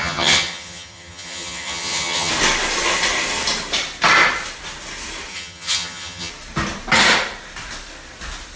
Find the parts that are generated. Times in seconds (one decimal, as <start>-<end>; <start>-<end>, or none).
0.0-2.3; 5.3-6.3